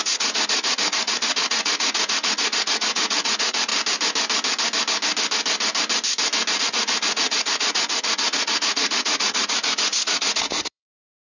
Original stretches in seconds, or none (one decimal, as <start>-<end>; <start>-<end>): 3.7-6.6